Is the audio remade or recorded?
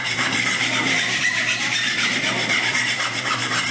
remade